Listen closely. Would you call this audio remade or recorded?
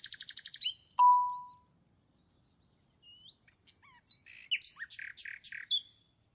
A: recorded